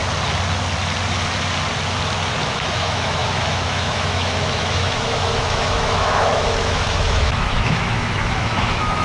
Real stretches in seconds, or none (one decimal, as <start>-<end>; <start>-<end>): 0.0-2.5